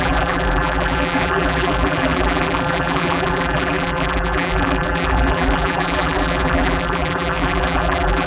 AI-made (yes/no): yes